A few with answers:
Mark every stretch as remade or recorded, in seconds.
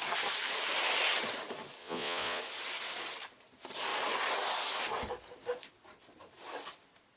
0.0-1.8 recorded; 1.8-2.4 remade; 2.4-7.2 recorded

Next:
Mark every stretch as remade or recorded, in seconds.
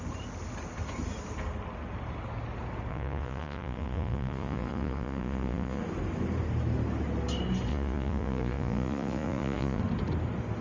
0.0-2.9 recorded; 2.9-5.8 remade; 5.8-7.7 recorded; 7.7-9.8 remade; 9.8-10.6 recorded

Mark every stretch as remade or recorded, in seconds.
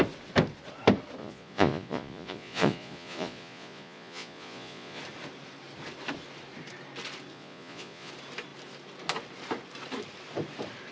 0.0-1.2 recorded; 1.2-5.0 remade; 5.0-7.3 recorded; 7.3-8.1 remade; 8.1-10.9 recorded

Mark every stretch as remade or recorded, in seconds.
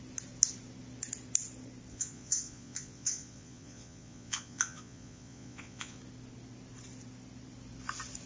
0.0-1.9 recorded; 1.9-6.0 remade; 6.0-8.3 recorded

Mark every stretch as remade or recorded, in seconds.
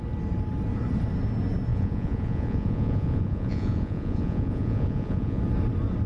0.0-1.7 recorded; 1.7-5.4 remade; 5.4-6.1 recorded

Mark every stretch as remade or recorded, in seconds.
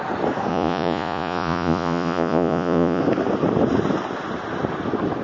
0.0-0.5 recorded; 0.5-3.0 remade; 3.0-5.2 recorded